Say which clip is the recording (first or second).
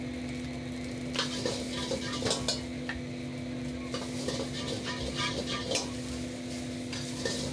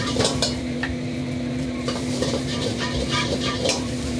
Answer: first